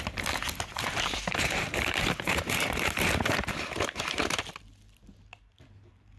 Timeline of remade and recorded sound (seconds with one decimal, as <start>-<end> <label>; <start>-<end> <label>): 0.0-0.7 recorded; 0.7-4.4 remade; 4.4-6.2 recorded